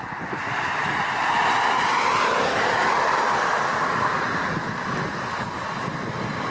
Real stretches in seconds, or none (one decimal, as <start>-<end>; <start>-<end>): 0.0-6.5